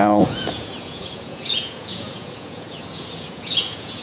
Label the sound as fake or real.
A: fake